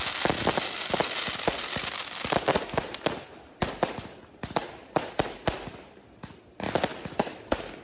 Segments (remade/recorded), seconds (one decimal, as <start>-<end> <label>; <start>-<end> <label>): 0.0-7.8 recorded